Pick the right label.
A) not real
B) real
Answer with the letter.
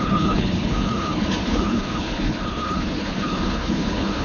A